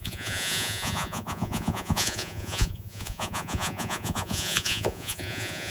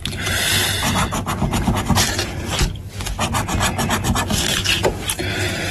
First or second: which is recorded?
second